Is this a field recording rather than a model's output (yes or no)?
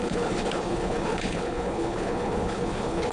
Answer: no